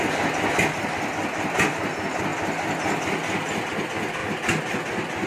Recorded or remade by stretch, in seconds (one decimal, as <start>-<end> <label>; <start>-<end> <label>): 0.0-5.3 recorded